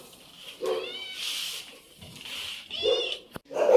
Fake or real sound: real